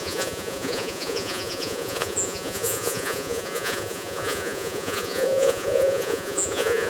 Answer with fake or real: fake